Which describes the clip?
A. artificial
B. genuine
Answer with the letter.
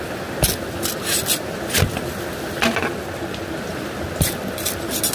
B